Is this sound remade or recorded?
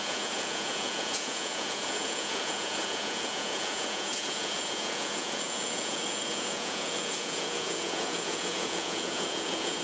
remade